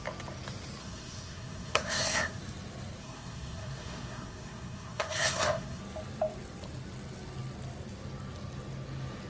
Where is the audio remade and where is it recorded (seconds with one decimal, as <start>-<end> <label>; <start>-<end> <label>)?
0.0-0.8 recorded; 0.8-2.4 remade; 2.4-3.0 recorded; 3.0-5.8 remade; 5.8-9.3 recorded